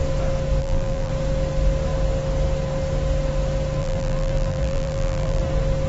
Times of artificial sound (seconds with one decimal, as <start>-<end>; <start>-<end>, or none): 0.6-1.1; 3.8-5.4